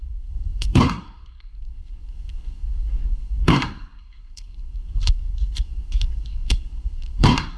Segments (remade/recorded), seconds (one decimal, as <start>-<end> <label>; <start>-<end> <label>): 0.0-7.6 remade